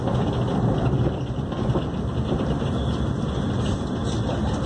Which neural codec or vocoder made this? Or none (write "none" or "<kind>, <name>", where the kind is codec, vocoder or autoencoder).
none